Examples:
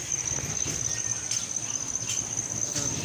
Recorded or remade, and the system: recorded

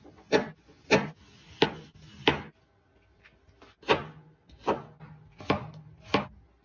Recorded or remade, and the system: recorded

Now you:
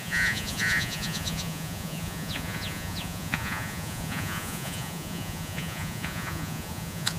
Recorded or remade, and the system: remade, vocoder, Vocos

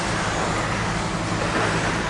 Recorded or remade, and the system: recorded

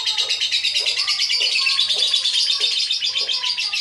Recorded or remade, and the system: recorded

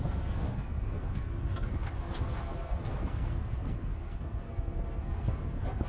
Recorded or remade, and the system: remade, codec, SNAC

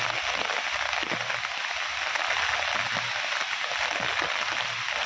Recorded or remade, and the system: recorded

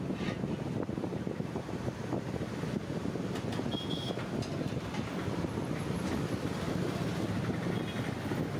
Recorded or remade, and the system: recorded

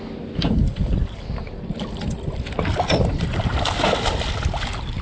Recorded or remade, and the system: recorded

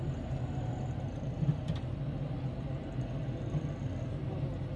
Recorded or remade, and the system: recorded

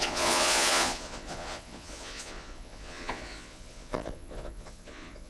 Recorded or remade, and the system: remade, vocoder, Vocos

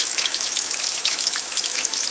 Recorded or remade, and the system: remade, autoencoder, DAC-VAE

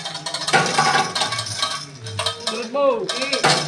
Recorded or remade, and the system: recorded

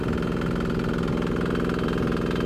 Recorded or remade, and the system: recorded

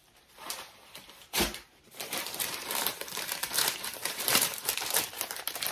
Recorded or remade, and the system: remade, vocoder, BigVGAN v2